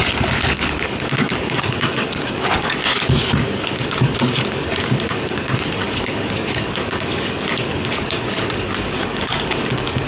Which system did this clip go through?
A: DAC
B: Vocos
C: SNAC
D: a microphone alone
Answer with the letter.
A